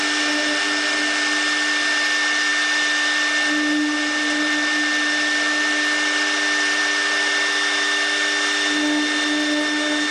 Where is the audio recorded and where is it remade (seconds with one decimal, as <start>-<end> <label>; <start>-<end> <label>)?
0.0-10.1 recorded